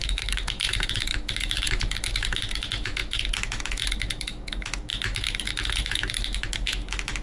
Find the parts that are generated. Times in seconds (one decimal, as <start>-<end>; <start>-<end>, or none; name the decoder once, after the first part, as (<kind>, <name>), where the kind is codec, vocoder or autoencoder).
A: 0.0-7.2 (autoencoder, DAC-VAE)

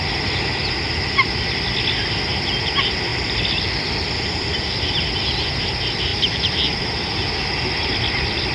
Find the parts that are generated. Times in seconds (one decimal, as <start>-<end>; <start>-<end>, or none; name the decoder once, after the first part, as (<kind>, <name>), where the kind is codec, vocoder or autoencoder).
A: 3.1-4.6 (vocoder, BigVGAN v2); 6.1-6.8

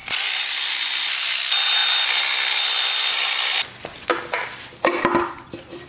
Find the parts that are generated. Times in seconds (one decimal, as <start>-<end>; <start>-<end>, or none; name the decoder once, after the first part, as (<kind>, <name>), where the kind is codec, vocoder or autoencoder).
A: none